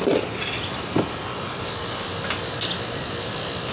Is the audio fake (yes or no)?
no